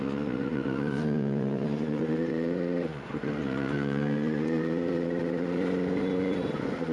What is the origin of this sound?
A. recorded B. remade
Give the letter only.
B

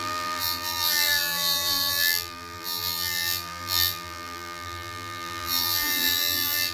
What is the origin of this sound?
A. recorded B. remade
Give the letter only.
B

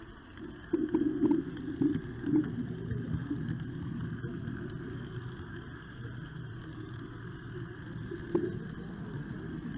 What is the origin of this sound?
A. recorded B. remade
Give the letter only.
A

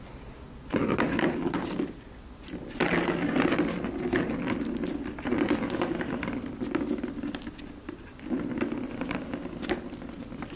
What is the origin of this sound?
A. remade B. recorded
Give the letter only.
B